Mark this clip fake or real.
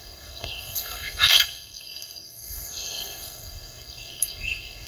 fake